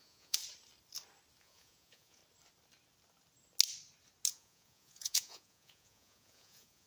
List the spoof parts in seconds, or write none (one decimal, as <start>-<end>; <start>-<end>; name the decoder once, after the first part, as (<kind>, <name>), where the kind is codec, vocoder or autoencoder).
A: 0.0-0.4 (vocoder, Vocos); 1.4-2.2; 4.3-6.9